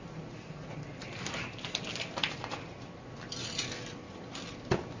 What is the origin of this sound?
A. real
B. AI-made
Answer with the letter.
A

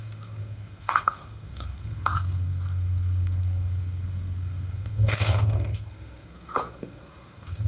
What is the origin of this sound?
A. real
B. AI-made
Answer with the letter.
B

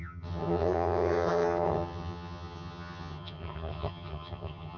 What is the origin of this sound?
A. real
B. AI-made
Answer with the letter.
B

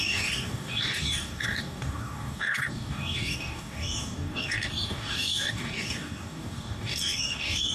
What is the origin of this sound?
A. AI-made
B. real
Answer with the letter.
A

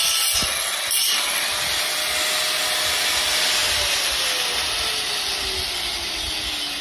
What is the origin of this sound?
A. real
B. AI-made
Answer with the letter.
A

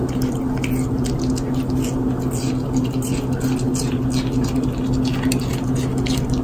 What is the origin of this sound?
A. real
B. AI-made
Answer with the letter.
A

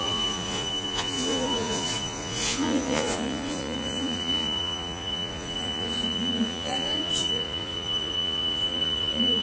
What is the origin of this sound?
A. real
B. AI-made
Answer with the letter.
B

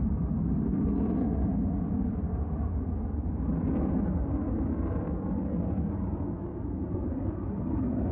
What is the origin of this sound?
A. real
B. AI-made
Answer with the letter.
A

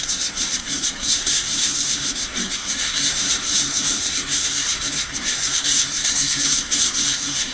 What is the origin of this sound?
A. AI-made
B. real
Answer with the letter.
A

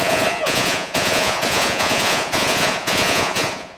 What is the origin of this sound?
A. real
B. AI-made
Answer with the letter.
B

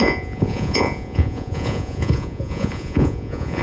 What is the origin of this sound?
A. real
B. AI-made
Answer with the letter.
B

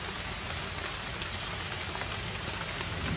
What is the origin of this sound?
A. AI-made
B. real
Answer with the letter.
B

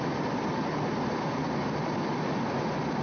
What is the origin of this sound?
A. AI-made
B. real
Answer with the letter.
B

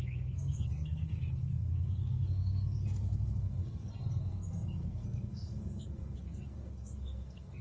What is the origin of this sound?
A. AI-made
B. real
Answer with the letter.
A